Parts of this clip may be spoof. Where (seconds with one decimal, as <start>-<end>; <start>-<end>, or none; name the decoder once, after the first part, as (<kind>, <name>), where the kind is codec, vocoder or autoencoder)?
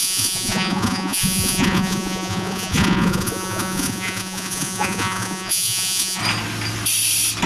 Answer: 0.0-6.2 (vocoder, Vocos)